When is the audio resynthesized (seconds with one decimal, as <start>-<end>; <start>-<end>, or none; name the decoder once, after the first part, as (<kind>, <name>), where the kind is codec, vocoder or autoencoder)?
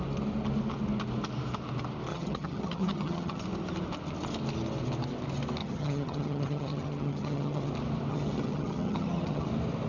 2.1-3.4 (vocoder, HiFi-GAN); 5.6-7.7; 8.1-9.5